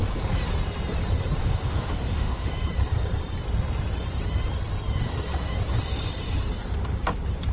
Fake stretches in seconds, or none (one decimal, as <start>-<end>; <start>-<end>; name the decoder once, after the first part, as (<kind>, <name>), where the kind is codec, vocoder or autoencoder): 1.4-2.5 (autoencoder, DAC-VAE)